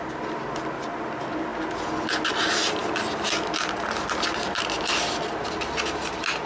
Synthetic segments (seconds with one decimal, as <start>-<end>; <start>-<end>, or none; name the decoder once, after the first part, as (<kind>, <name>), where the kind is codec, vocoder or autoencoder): none